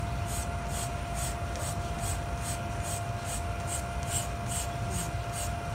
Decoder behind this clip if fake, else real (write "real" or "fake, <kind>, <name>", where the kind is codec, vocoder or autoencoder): real